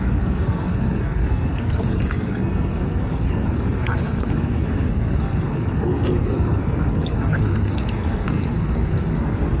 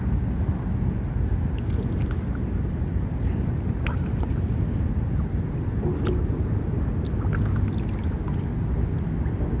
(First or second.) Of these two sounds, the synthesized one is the first